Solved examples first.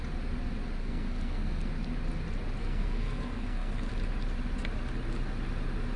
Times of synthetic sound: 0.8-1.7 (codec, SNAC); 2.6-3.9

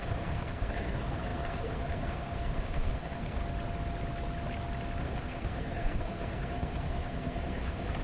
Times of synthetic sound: 0.0-3.4 (codec, SNAC); 5.0-8.0

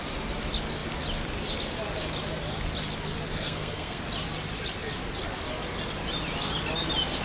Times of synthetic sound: 3.3-4.0 (codec, SNAC)

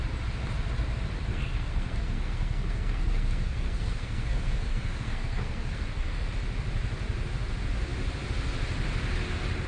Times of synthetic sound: 1.3-6.3 (codec, SNAC)